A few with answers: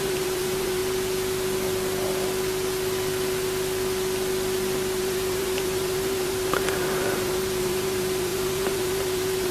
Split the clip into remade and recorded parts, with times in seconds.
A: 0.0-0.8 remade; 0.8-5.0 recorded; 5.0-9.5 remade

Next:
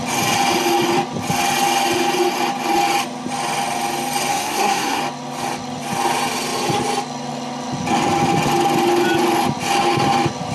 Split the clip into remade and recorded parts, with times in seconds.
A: 0.0-4.3 recorded; 4.3-5.0 remade; 5.0-10.5 recorded

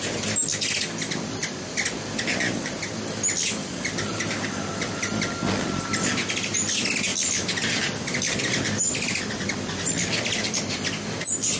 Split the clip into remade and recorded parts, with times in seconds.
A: 0.0-3.6 recorded; 3.6-4.9 remade; 4.9-11.6 recorded

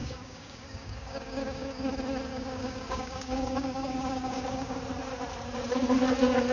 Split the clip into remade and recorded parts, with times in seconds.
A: 0.0-1.9 remade; 1.9-2.3 recorded; 2.3-4.8 remade; 4.8-6.5 recorded